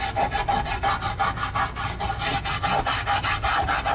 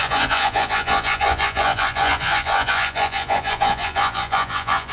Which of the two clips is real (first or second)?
first